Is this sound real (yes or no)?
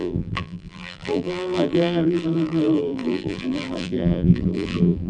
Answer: no